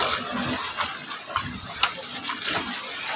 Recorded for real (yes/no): yes